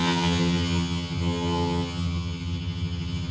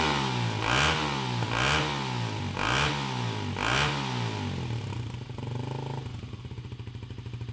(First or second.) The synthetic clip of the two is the first